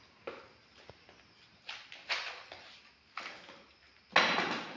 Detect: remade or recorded recorded